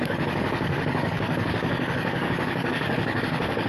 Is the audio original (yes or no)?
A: no